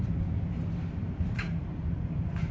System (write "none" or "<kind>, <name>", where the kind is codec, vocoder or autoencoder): none